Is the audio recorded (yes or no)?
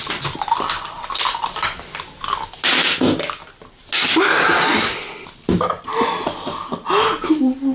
yes